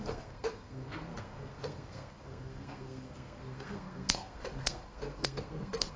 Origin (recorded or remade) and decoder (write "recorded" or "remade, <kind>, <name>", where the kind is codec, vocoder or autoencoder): remade, codec, SNAC